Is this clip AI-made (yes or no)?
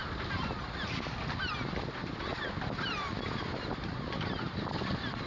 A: no